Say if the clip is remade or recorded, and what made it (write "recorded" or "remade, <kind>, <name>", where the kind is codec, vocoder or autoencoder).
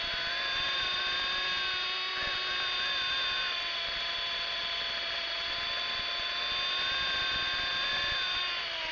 recorded